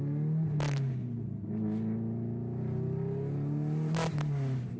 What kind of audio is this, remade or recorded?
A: recorded